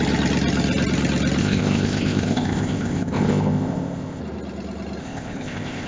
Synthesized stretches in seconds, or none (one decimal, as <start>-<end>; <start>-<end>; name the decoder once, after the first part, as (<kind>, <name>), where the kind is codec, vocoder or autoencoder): 1.4-4.2 (codec, ZipCodec); 5.0-5.9